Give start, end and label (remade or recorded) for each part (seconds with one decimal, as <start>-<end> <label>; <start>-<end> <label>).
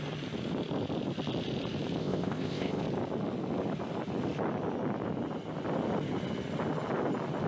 0.0-2.0 recorded; 2.0-2.8 remade; 2.8-7.5 recorded